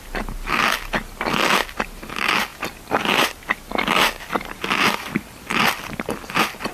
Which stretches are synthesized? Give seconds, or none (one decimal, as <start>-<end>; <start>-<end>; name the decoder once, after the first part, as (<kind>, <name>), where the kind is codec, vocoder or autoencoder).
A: none

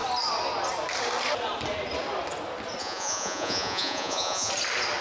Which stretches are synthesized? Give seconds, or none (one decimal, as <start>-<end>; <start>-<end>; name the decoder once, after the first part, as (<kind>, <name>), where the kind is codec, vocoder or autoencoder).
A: 2.8-4.5 (vocoder, Vocos)

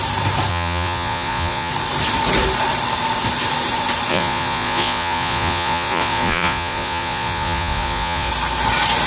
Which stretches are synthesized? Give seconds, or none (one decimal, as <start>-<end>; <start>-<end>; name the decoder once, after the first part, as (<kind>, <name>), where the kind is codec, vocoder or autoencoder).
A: 0.5-1.7 (vocoder, Vocos); 4.1-8.3